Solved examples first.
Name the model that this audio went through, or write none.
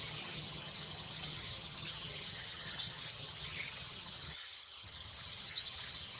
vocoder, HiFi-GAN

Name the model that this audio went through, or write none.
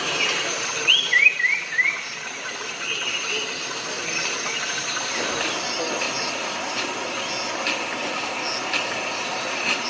none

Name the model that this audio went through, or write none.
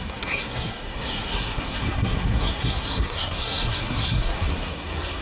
codec, SNAC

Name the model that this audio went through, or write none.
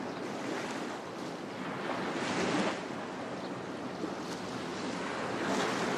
none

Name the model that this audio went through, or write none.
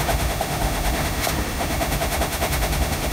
autoencoder, DAC-VAE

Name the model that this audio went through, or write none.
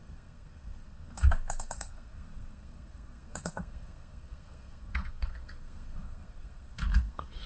codec, SNAC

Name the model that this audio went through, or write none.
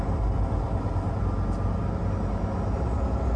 none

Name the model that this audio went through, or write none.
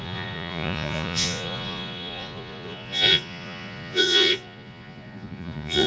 vocoder, Vocos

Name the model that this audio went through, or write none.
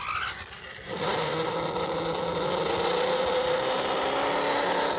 none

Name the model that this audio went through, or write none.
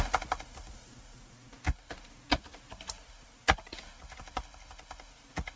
none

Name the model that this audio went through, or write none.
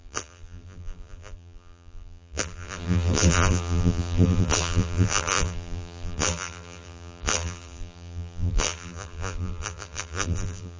vocoder, BigVGAN v2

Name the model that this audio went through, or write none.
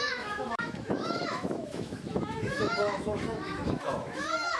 autoencoder, DAC-VAE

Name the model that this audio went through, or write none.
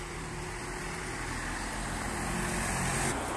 none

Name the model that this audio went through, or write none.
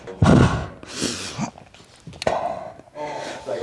none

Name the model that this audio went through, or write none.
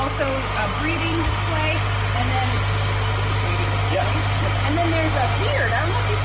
none